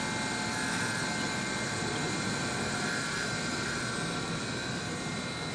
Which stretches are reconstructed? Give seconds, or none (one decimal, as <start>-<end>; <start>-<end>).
0.5-3.8